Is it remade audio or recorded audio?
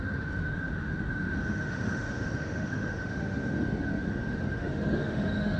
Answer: remade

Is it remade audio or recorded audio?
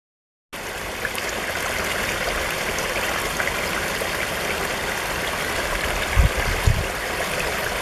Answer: recorded